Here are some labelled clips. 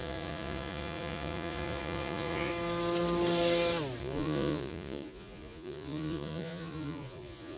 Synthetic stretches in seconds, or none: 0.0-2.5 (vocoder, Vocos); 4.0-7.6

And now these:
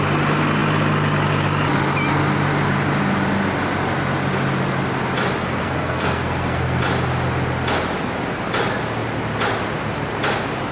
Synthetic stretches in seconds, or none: 5.4-6.8 (codec, SNAC)

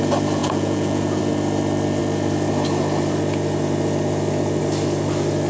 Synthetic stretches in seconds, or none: 0.4-1.2 (vocoder, Vocos)

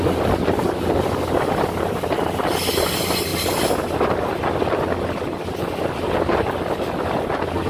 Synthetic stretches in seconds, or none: none

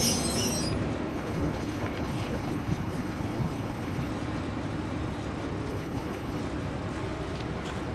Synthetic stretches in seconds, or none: 1.1-4.1 (codec, HILCodec); 5.7-6.4

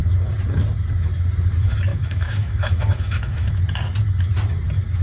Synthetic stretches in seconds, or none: 1.9-3.6 (autoencoder, DAC-VAE)